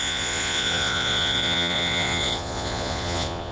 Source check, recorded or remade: remade